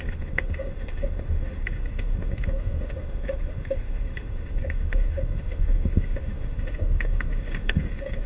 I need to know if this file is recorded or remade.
remade